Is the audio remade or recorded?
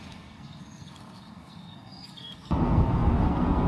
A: remade